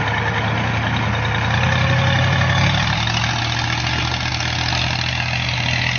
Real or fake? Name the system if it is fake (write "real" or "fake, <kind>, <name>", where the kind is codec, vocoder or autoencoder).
real